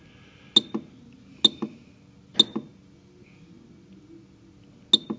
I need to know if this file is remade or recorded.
recorded